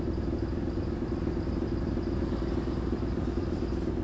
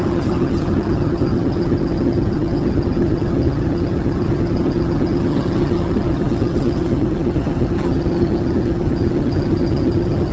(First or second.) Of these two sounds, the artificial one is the second